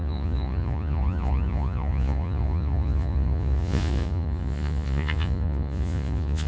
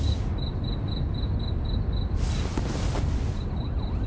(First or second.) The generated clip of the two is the first